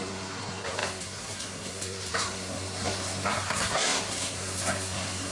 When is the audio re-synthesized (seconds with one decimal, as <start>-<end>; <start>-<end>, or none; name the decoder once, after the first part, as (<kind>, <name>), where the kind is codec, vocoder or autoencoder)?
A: 0.0-5.3 (codec, SNAC)